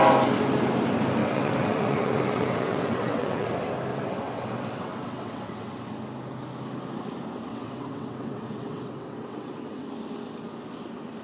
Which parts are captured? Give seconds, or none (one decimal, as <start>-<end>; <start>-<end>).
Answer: 0.0-1.2; 3.5-3.9; 5.9-7.5; 9.8-11.2